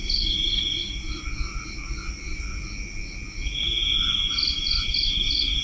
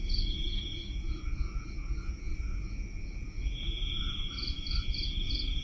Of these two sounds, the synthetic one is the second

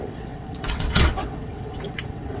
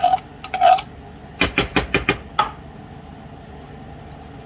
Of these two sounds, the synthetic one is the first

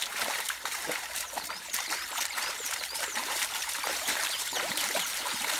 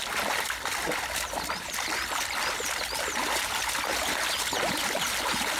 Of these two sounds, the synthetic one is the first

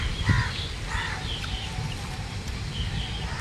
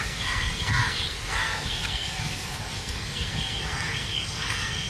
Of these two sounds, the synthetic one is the second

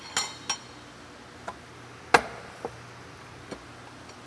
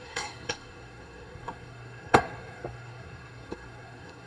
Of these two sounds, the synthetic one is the second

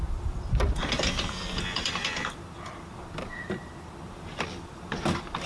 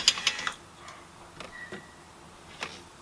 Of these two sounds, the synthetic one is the first